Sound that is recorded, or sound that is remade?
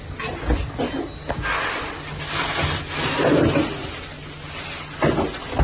recorded